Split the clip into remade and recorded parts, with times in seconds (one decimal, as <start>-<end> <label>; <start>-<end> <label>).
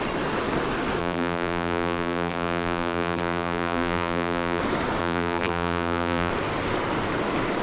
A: 0.0-1.0 recorded; 1.0-4.6 remade; 4.6-5.0 recorded; 5.0-6.3 remade; 6.3-7.6 recorded